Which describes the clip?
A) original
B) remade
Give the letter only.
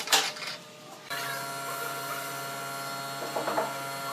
A